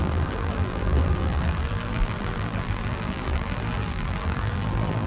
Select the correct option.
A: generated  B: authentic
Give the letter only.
A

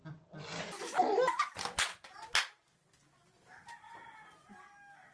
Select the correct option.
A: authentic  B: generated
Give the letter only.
A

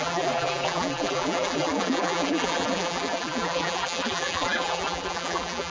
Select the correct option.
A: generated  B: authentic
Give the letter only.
A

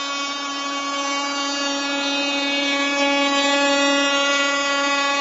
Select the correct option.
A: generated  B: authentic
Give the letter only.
B